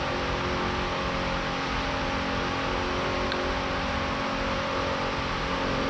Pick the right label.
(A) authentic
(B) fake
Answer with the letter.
A